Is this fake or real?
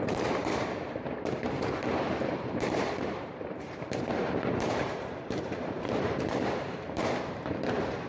fake